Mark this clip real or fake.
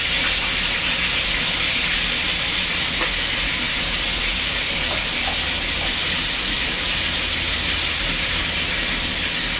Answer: real